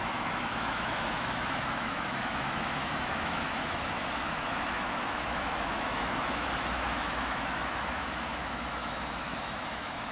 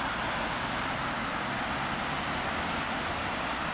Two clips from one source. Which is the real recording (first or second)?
second